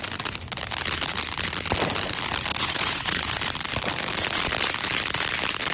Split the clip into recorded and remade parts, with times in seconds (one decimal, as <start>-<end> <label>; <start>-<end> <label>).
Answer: 0.0-2.5 recorded; 2.5-3.4 remade; 3.4-5.7 recorded